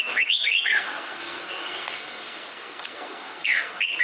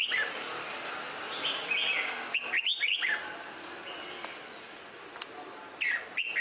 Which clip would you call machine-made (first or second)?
first